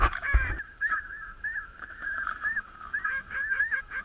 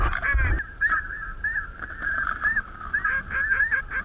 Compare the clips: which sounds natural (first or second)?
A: second